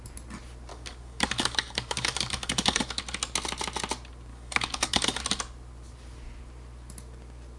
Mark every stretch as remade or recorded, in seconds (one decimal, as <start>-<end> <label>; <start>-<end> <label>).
0.0-0.7 recorded; 0.7-3.0 remade; 3.0-4.3 recorded; 4.3-5.2 remade; 5.2-7.6 recorded